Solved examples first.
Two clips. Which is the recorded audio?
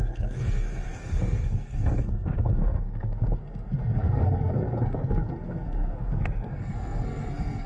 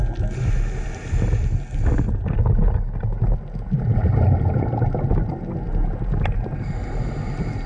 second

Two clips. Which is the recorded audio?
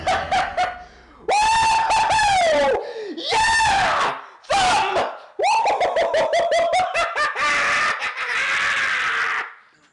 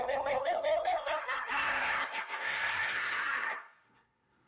first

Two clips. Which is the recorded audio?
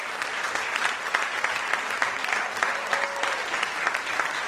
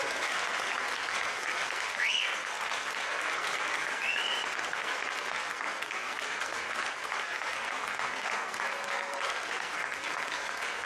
first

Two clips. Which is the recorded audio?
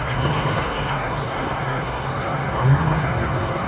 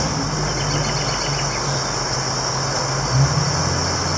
second